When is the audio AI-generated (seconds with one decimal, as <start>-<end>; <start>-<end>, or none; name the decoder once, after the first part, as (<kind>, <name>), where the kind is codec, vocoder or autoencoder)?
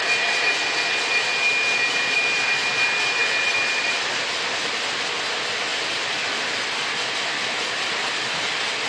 none